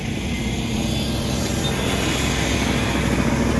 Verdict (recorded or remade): recorded